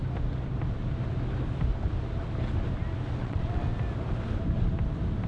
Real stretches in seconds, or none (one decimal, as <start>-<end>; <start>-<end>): 0.0-3.2; 3.6-5.3